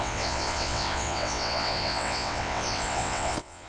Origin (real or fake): fake